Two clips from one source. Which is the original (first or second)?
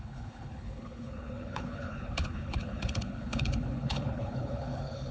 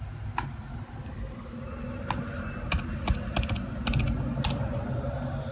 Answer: second